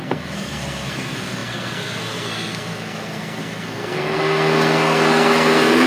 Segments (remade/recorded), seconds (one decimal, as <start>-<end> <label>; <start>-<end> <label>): 0.0-5.9 remade